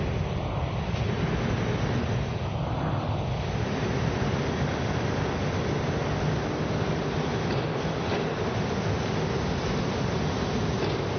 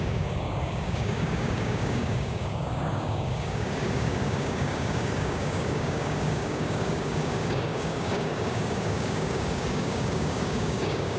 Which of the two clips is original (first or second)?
first